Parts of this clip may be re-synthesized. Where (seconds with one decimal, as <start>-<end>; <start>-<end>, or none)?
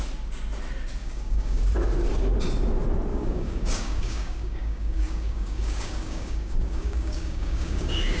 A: 1.0-1.6; 3.1-8.2